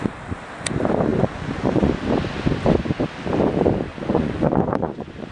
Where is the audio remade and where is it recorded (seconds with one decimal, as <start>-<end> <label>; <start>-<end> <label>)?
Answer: 0.0-1.1 recorded; 1.1-1.9 remade; 1.9-3.9 recorded; 3.9-5.3 remade